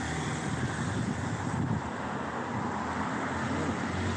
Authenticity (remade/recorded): recorded